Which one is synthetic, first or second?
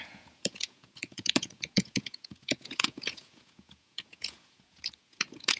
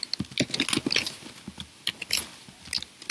first